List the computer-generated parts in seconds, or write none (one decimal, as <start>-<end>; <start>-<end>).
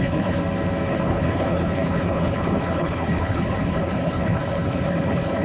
0.0-0.4; 0.9-5.4